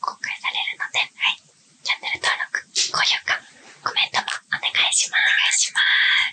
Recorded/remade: recorded